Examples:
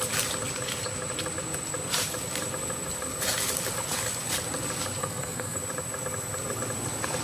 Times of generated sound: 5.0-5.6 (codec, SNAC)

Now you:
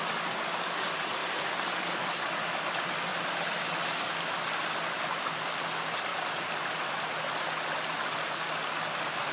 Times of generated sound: none

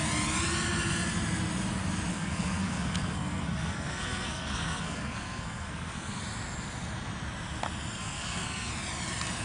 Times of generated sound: 2.1-6.2 (codec, SNAC); 8.0-8.7

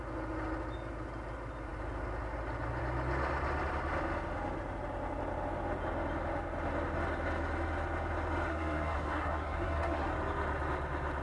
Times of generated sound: 8.5-10.1 (codec, SNAC)

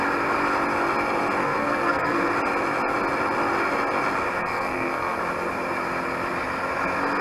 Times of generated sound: 1.4-2.3 (codec, SNAC); 4.4-5.2

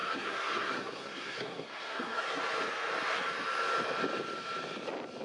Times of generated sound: 0.0-2.4 (codec, SNAC)